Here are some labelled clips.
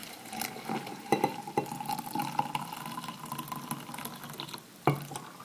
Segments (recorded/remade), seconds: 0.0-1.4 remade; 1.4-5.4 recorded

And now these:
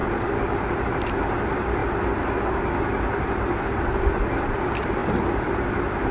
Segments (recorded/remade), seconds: 0.0-0.9 recorded; 0.9-1.8 remade; 1.8-3.6 recorded; 3.6-6.1 remade

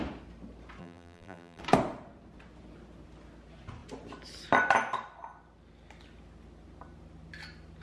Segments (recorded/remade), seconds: 0.0-0.8 recorded; 0.8-1.6 remade; 1.6-7.8 recorded

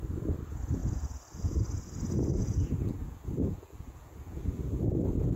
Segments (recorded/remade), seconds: 0.0-2.3 recorded; 2.3-4.8 remade; 4.8-5.4 recorded

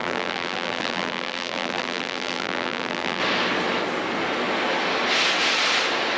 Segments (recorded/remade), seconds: 0.0-3.2 remade; 3.2-6.2 recorded